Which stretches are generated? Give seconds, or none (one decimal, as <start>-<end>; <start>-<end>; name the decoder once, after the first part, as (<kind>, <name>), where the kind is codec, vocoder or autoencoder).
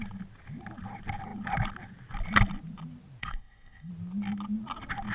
3.2-3.9 (codec, SNAC)